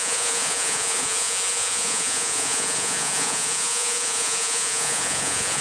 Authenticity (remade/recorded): remade